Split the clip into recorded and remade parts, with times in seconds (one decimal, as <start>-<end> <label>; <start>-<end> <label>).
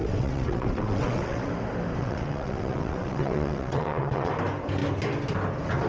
0.0-1.5 remade; 1.5-2.0 recorded; 2.0-4.3 remade; 4.3-5.9 recorded